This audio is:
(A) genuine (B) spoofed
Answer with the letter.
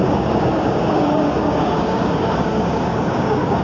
B